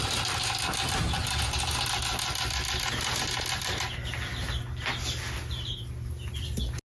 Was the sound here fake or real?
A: real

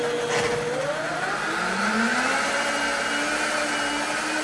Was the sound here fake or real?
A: real